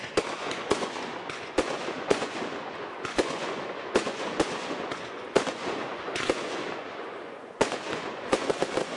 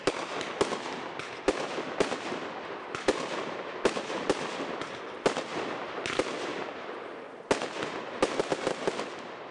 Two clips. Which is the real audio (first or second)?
second